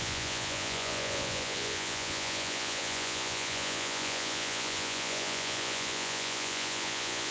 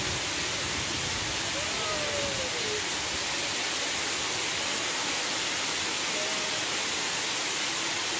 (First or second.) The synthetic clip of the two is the first